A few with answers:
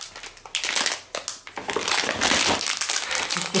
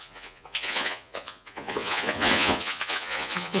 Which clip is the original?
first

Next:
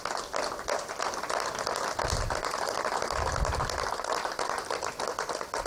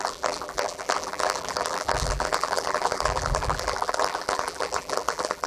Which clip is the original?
first